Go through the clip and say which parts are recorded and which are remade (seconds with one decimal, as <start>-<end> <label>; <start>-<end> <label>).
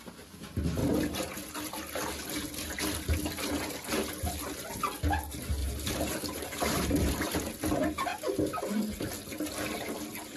0.0-5.6 recorded; 5.6-6.9 remade; 6.9-10.4 recorded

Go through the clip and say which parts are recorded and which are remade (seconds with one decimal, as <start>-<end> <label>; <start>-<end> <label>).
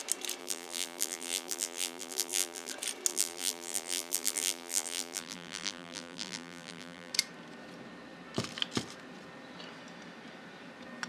0.0-0.4 recorded; 0.4-2.7 remade; 2.7-3.1 recorded; 3.1-7.1 remade; 7.1-11.1 recorded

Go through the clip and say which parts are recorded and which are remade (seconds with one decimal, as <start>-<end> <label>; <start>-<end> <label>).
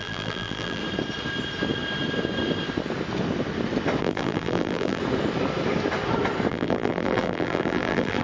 0.0-0.8 remade; 0.8-4.0 recorded; 4.0-5.0 remade; 5.0-6.5 recorded; 6.5-8.2 remade